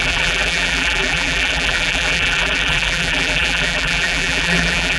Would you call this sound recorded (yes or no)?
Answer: no